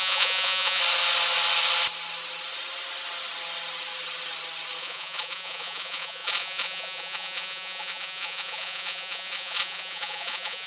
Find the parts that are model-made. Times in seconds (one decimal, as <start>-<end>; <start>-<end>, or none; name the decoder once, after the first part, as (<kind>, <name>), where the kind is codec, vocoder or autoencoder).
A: 0.0-0.8 (vocoder, Vocos); 4.8-10.7

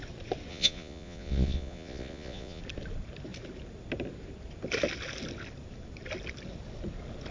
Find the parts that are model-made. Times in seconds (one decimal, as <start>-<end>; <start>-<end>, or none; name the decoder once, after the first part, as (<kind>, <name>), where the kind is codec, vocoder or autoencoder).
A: 0.5-2.6 (vocoder, Vocos)

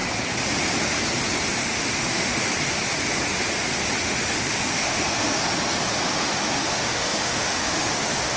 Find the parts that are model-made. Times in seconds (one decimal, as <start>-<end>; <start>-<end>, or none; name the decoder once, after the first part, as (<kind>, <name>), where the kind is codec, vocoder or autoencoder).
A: 1.6-2.4 (autoencoder, DAC-VAE); 4.0-5.4; 6.1-8.4

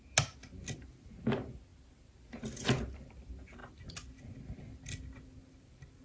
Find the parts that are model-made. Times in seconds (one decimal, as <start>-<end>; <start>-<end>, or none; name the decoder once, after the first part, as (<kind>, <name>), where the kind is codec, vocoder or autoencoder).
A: none

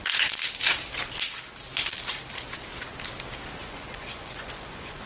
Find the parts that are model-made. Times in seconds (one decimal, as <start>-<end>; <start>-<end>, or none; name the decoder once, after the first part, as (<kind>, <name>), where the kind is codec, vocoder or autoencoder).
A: 3.6-5.1 (vocoder, Vocos)